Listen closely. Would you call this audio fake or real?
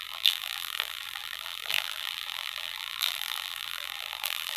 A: fake